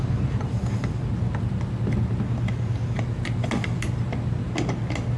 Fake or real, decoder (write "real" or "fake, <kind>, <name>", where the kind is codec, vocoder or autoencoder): real